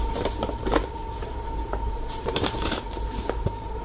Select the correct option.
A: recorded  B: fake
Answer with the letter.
B